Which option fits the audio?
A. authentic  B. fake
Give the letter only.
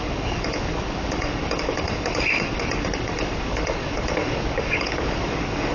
B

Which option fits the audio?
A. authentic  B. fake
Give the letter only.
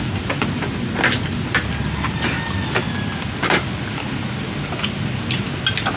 A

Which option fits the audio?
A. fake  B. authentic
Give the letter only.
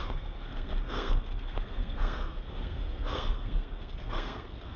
A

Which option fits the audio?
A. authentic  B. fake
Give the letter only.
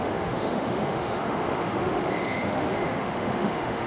B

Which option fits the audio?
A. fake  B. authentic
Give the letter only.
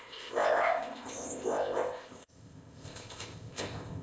A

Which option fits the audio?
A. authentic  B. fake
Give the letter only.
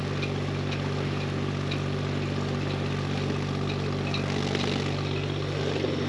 A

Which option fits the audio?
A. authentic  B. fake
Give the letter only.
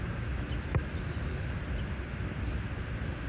A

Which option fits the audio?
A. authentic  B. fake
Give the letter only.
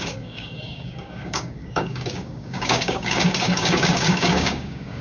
B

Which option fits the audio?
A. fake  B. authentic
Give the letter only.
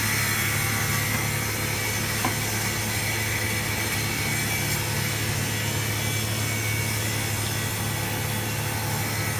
B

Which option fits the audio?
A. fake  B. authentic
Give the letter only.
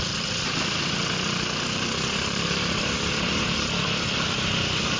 B